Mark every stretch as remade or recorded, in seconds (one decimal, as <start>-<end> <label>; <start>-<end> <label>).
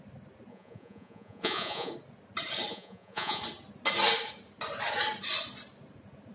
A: 0.0-0.5 recorded; 0.5-1.9 remade; 1.9-2.7 recorded; 2.7-3.4 remade; 3.4-6.3 recorded